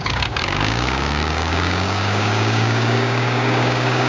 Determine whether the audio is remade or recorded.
remade